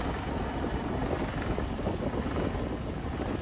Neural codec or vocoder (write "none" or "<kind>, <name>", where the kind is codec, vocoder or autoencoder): none